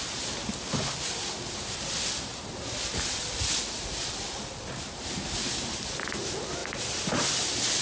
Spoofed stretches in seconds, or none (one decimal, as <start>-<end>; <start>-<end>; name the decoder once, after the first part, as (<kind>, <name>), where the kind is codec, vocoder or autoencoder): none